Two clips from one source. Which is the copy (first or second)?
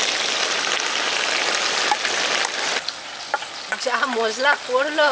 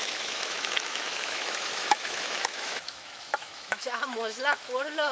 second